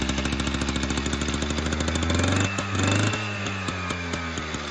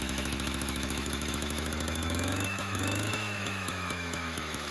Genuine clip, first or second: first